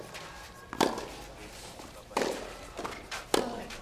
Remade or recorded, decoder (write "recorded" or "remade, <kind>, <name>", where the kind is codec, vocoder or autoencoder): recorded